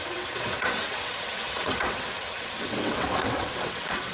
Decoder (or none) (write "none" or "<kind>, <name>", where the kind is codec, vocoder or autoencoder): vocoder, WaveNeXt